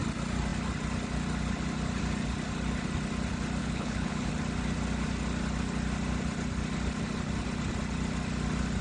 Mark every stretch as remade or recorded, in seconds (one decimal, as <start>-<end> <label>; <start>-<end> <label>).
0.0-3.6 recorded; 3.6-4.3 remade; 4.3-8.8 recorded